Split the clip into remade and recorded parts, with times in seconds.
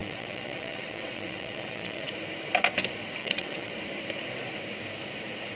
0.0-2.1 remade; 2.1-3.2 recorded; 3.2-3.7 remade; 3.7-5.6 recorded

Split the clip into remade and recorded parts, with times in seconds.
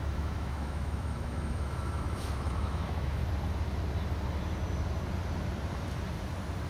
0.0-3.2 remade; 3.2-6.7 recorded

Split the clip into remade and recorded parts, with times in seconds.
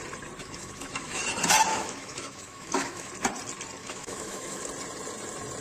0.0-0.4 recorded; 0.4-1.2 remade; 1.2-1.7 recorded; 1.7-3.1 remade; 3.1-3.8 recorded; 3.8-4.6 remade; 4.6-5.6 recorded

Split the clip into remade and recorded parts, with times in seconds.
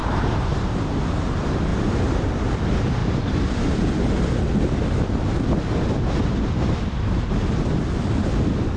0.0-1.2 remade; 1.2-1.7 recorded; 1.7-2.6 remade; 2.6-3.0 recorded; 3.0-3.5 remade; 3.5-8.8 recorded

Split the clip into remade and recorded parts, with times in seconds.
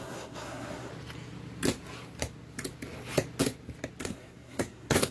0.0-0.9 remade; 0.9-4.0 recorded; 4.0-5.1 remade